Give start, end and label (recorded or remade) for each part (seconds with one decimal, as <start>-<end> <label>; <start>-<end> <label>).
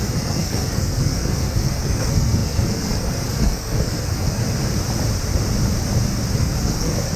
0.0-4.4 remade; 4.4-6.4 recorded; 6.4-7.2 remade